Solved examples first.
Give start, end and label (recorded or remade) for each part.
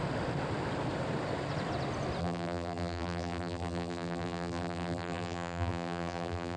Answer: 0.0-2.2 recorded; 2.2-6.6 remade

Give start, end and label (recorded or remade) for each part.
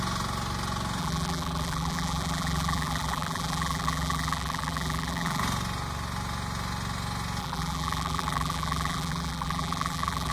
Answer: 0.0-1.0 recorded; 1.0-5.4 remade; 5.4-7.4 recorded; 7.4-10.3 remade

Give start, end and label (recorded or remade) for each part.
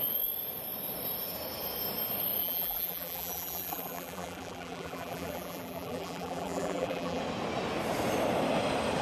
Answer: 0.0-2.4 recorded; 2.4-7.2 remade; 7.2-9.0 recorded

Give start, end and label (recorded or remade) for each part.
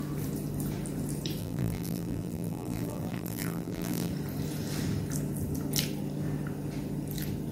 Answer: 0.0-1.4 recorded; 1.4-4.1 remade; 4.1-7.5 recorded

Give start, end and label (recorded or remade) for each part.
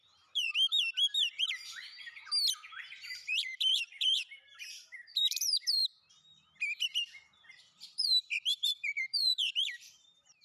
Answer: 0.0-2.2 remade; 2.2-2.8 recorded; 2.8-5.8 remade; 5.8-7.5 recorded; 7.5-10.4 remade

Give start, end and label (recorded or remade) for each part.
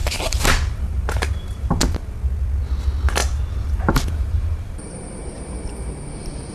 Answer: 0.0-1.8 remade; 1.8-3.2 recorded; 3.2-5.1 remade; 5.1-6.5 recorded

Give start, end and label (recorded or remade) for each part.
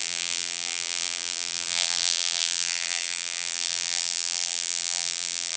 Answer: 0.0-5.6 remade